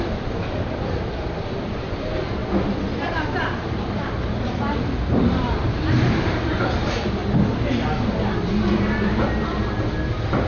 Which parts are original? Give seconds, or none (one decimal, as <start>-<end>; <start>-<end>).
7.2-10.0